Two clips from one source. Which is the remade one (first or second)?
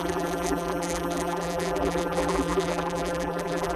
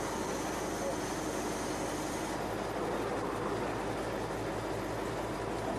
first